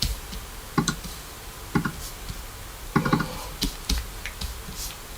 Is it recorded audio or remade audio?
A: recorded